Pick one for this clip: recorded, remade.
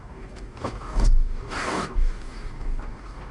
remade